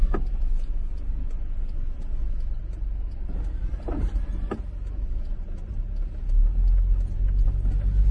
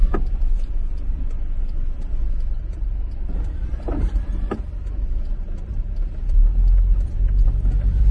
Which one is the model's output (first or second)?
second